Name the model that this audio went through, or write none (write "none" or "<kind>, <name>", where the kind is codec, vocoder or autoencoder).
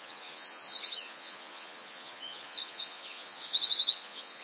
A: vocoder, Vocos